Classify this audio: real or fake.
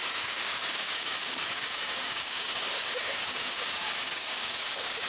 fake